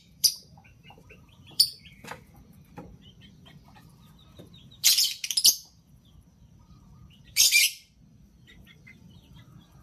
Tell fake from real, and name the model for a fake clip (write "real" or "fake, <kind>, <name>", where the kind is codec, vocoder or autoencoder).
fake, vocoder, BigVGAN v2